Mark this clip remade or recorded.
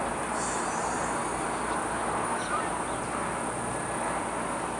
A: recorded